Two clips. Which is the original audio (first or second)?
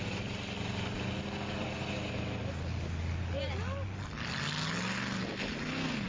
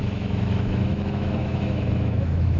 first